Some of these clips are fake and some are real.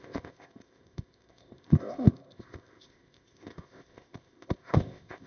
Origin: fake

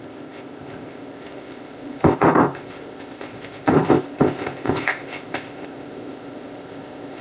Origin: fake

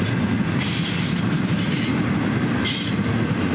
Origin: real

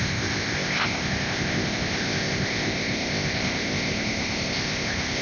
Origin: fake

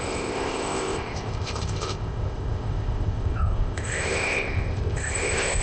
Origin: fake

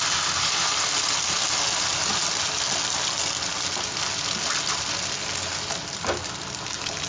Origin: real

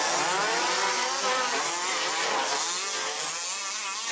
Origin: real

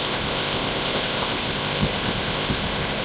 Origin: fake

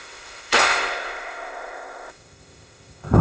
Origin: fake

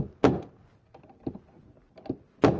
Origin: real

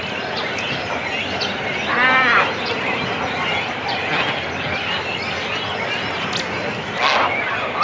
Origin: real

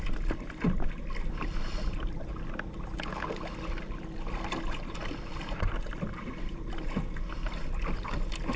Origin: real